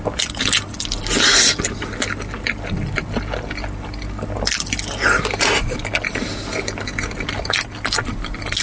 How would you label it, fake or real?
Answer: real